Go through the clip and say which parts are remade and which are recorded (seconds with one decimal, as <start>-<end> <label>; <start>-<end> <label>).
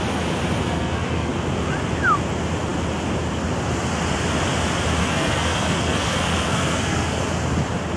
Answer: 0.0-0.6 recorded; 0.6-1.3 remade; 1.3-5.0 recorded; 5.0-7.2 remade; 7.2-8.0 recorded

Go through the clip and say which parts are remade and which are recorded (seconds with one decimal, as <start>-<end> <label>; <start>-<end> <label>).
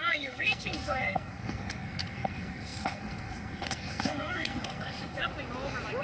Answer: 0.0-5.3 remade; 5.3-6.0 recorded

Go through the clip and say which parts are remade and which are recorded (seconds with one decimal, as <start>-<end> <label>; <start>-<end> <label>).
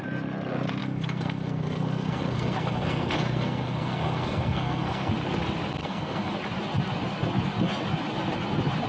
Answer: 0.0-0.8 recorded; 0.8-5.1 remade; 5.1-5.8 recorded; 5.8-6.3 remade; 6.3-8.9 recorded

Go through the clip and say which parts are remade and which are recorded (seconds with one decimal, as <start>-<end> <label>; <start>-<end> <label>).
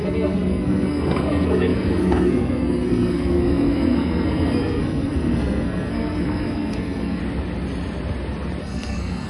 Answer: 0.0-7.2 remade; 7.2-8.6 recorded; 8.6-9.3 remade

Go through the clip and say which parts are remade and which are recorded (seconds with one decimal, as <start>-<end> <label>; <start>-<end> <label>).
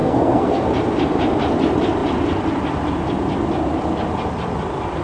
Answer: 0.0-0.7 remade; 0.7-5.0 recorded